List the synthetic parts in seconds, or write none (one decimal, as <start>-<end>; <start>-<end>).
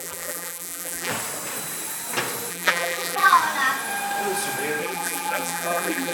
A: 0.0-1.1; 2.5-3.4; 4.8-6.1